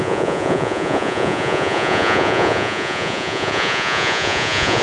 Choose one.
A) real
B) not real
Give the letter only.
B